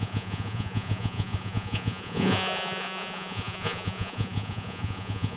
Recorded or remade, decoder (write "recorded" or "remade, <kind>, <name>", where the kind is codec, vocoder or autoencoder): remade, vocoder, Vocos